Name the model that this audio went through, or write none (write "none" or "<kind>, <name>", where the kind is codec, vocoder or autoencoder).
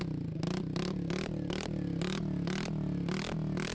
none